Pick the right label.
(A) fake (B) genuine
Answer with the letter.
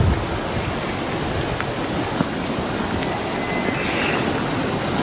B